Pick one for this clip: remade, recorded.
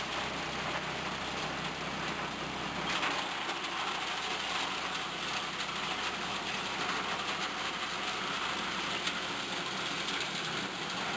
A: recorded